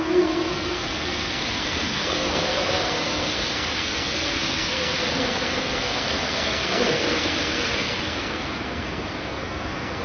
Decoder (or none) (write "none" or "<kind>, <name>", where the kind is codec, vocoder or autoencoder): codec, SNAC